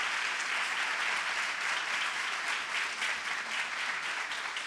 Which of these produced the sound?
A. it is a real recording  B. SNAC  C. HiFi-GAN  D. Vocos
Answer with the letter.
A